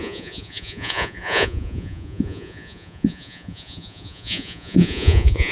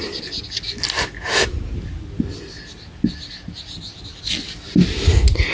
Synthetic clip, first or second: first